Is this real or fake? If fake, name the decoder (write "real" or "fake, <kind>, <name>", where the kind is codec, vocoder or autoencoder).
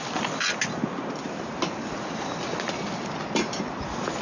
real